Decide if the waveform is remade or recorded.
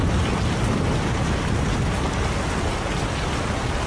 remade